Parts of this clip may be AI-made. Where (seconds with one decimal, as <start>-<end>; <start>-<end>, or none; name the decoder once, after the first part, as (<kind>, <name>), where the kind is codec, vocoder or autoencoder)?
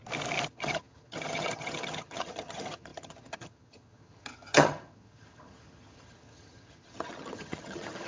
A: 0.5-8.1 (vocoder, HiFi-GAN)